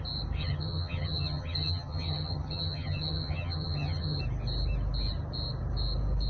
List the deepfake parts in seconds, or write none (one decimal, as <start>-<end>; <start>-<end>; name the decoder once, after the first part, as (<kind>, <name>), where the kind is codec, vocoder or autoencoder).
0.4-4.2 (vocoder, HiFi-GAN)